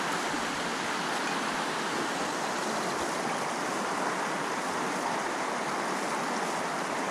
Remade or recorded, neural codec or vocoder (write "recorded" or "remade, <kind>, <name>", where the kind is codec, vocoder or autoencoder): recorded